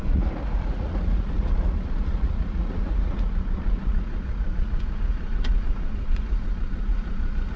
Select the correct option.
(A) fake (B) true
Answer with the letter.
A